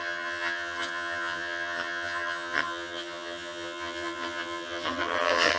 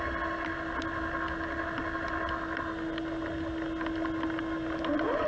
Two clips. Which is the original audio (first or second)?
second